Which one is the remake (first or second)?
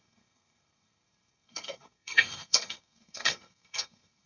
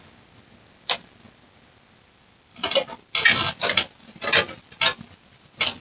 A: first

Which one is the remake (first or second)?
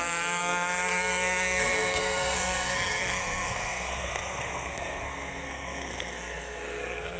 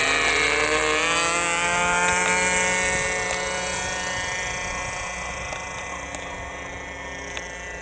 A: first